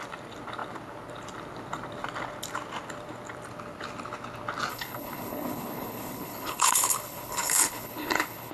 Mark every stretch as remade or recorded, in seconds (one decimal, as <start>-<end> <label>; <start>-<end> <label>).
0.0-4.7 recorded; 4.7-8.5 remade